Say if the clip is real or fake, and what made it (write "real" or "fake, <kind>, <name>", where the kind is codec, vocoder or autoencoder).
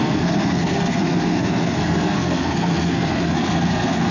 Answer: fake, codec, SNAC